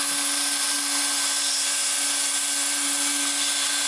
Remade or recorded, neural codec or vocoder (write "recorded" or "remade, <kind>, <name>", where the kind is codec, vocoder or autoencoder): recorded